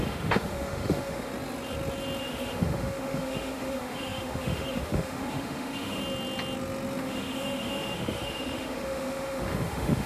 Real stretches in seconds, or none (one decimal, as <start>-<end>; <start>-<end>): 1.3-2.2; 6.0-7.0